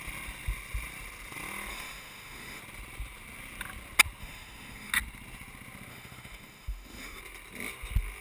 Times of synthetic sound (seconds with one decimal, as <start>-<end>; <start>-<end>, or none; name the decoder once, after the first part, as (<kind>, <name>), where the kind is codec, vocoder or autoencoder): 1.7-2.6 (autoencoder, DAC-VAE); 4.2-4.9; 5.9-7.2